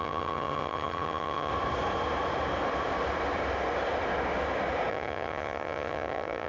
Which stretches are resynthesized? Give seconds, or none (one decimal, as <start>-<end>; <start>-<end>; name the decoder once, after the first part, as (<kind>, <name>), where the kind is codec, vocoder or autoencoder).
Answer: 0.0-1.5 (vocoder, HiFi-GAN); 4.9-6.5